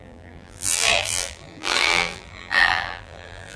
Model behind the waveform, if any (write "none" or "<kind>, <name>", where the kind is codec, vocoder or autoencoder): vocoder, BigVGAN v2